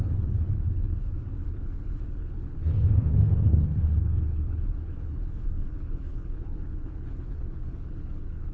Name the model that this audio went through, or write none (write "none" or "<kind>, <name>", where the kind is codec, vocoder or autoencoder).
codec, HILCodec